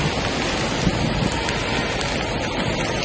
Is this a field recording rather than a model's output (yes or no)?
yes